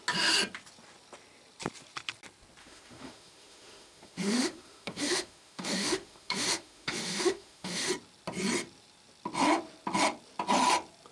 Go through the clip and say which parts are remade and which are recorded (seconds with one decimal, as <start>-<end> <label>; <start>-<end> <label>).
0.0-2.6 recorded; 2.6-7.9 remade; 7.9-11.1 recorded